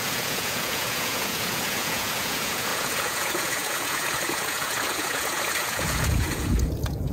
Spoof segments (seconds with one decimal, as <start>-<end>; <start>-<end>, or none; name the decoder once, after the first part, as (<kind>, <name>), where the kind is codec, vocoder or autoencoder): 0.0-7.1 (vocoder, Vocos)

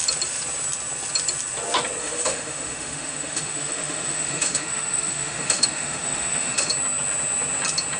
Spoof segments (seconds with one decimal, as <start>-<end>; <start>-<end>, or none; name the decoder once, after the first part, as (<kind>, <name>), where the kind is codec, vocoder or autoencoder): 2.0-6.7 (autoencoder, DAC-VAE)

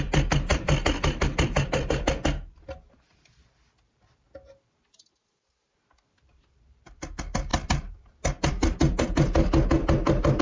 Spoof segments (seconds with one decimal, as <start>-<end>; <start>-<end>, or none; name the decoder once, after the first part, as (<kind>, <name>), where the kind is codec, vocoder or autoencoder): none